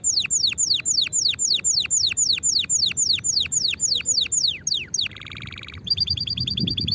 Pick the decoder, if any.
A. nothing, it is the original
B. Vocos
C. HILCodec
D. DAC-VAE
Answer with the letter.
A